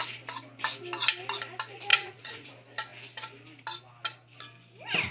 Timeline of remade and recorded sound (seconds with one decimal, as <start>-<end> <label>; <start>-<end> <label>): 0.0-1.9 recorded; 1.9-2.5 remade; 2.5-5.1 recorded